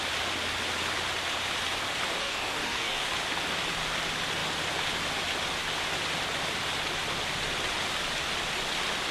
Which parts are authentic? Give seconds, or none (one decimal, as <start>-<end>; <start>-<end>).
0.0-2.2; 3.1-9.1